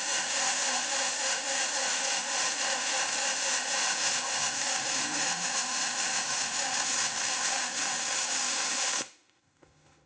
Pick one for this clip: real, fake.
fake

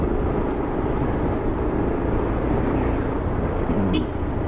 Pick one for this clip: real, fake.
real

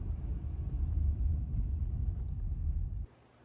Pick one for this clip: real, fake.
real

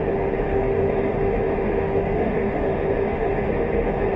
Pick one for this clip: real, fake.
fake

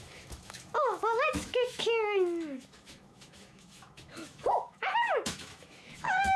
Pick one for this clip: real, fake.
fake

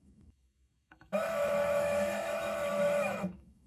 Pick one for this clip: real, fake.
fake